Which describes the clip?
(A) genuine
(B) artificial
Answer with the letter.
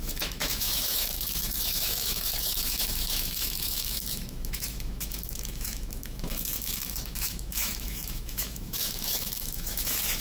B